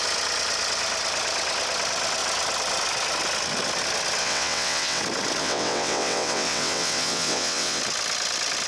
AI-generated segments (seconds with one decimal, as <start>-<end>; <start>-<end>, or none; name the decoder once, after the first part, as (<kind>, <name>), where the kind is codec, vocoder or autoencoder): 4.2-5.0 (vocoder, WaveNeXt); 5.4-7.8